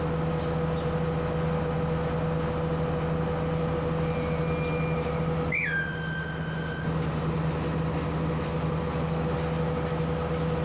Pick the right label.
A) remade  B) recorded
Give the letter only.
B